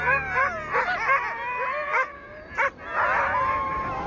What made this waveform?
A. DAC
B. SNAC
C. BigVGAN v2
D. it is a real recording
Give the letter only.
D